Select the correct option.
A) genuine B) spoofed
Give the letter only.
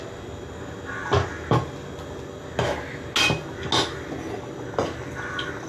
A